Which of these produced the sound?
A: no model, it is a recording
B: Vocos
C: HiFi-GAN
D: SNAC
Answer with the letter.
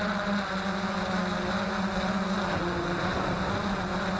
A